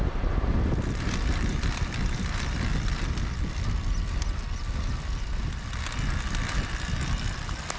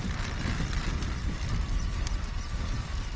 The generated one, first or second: second